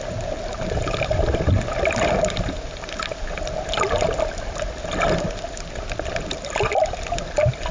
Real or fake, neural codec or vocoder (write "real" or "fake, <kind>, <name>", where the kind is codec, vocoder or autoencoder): real